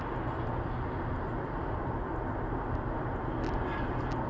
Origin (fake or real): real